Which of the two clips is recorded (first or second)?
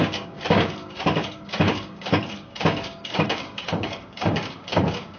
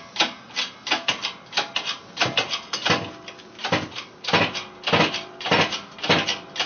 second